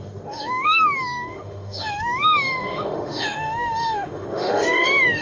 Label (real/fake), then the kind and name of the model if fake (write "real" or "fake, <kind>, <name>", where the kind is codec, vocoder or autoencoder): fake, autoencoder, DAC-VAE